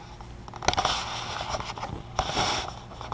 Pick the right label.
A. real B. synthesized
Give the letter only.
A